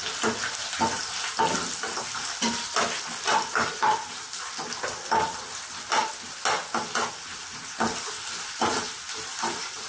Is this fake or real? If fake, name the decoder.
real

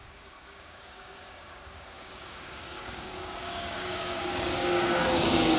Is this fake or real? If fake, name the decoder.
fake, codec, DAC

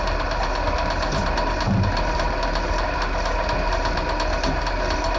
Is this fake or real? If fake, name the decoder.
real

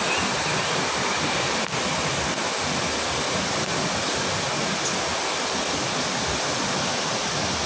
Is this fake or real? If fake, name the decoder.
real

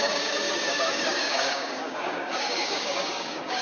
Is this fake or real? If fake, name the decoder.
fake, codec, DAC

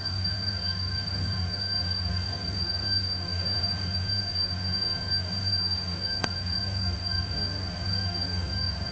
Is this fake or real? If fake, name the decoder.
fake, codec, DAC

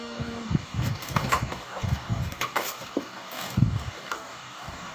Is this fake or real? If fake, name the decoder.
fake, codec, DAC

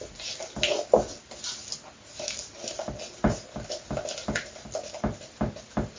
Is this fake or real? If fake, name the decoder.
real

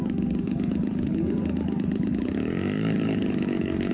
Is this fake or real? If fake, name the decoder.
fake, codec, DAC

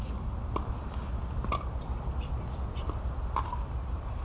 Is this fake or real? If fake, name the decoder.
real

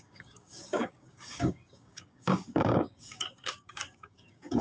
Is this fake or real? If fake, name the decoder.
fake, codec, DAC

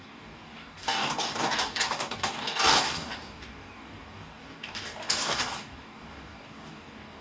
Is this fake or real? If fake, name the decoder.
fake, codec, DAC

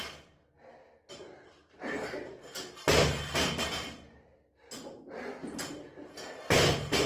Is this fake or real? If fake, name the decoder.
real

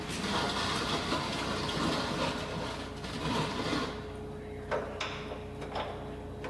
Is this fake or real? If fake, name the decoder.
real